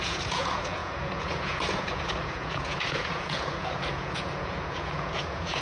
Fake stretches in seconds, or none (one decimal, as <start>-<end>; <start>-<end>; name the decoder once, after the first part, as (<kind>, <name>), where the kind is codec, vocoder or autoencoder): 0.0-5.6 (vocoder, Vocos)